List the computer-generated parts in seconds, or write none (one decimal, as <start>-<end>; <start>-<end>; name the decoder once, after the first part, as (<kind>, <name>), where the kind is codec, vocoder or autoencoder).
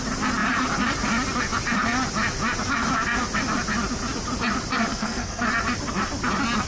4.9-5.5 (codec, SNAC)